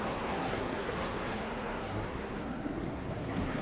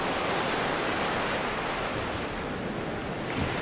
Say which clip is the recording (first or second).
second